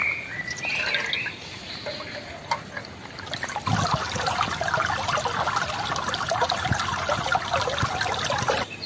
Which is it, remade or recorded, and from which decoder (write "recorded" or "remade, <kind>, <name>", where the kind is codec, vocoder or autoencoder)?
recorded